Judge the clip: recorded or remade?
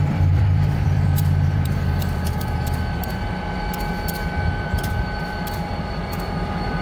remade